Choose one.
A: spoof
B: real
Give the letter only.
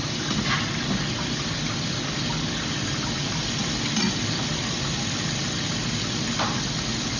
B